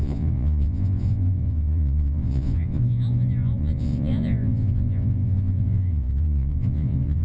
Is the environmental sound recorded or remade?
remade